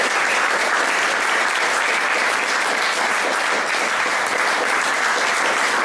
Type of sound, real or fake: real